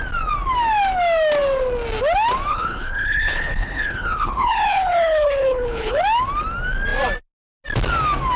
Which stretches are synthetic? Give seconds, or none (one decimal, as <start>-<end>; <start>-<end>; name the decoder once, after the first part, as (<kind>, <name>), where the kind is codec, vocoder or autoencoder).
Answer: 2.5-6.0 (codec, HILCodec)